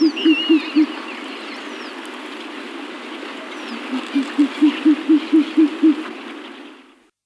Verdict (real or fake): real